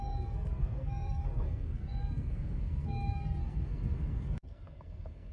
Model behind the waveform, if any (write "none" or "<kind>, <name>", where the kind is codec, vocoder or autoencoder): codec, SNAC